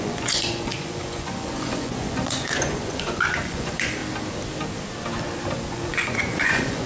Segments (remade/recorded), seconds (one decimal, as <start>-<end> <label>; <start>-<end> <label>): 0.0-4.0 remade; 4.0-5.7 recorded; 5.7-6.9 remade

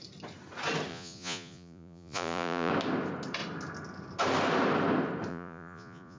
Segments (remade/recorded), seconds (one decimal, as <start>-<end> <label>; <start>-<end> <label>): 0.0-0.9 recorded; 0.9-2.7 remade; 2.7-5.3 recorded; 5.3-6.2 remade